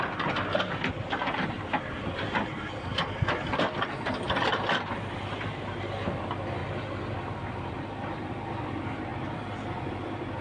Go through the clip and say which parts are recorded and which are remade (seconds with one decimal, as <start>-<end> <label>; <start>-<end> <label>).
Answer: 0.0-6.6 remade; 6.6-7.1 recorded; 7.1-10.4 remade